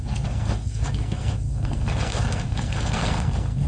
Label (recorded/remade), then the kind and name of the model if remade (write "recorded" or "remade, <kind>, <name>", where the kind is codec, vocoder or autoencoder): remade, codec, SNAC